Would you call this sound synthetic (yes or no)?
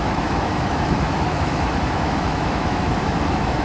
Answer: yes